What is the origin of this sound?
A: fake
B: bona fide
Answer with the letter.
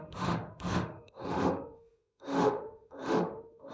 A